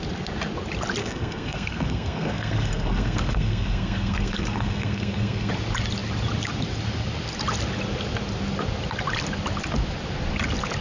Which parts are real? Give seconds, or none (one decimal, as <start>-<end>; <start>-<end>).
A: 0.0-1.0; 5.5-10.8